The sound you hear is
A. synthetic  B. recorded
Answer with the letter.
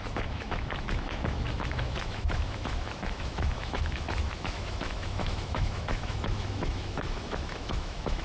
A